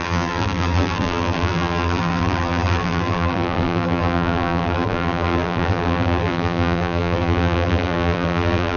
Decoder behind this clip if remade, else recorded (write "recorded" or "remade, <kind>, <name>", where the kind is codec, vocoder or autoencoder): remade, vocoder, BigVGAN v2